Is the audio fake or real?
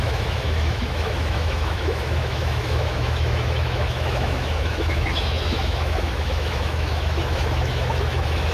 fake